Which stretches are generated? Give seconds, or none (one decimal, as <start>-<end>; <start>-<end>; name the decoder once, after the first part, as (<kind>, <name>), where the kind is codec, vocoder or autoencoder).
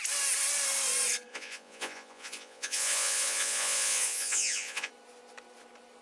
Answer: 1.3-4.9 (vocoder, Vocos)